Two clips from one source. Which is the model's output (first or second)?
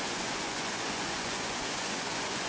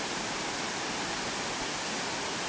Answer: first